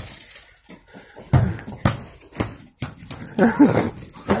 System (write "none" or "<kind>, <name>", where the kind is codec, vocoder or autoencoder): none